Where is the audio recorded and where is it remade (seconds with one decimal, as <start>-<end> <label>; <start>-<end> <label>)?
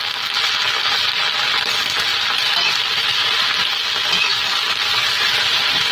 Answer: 0.0-5.9 recorded